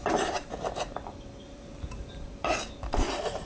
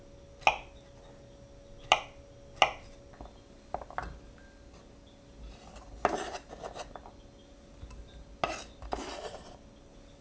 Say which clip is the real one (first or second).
second